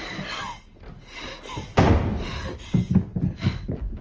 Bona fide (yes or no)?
yes